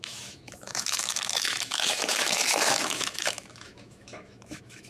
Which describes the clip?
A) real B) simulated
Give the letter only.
B